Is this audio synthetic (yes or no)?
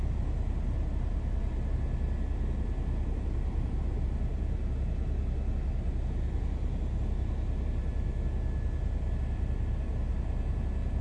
no